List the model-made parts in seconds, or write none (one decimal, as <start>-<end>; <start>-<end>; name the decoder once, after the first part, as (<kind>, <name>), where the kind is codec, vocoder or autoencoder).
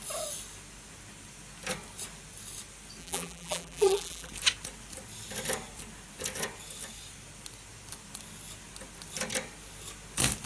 3.0-4.3 (vocoder, BigVGAN v2)